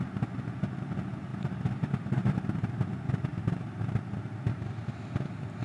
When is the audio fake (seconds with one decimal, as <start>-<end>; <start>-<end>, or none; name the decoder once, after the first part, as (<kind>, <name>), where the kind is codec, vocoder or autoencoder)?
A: 1.3-2.9 (vocoder, BigVGAN v2); 3.3-4.2